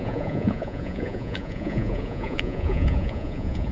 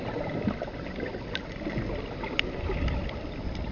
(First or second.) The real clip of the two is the second